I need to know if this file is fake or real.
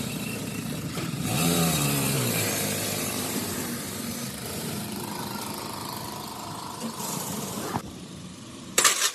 fake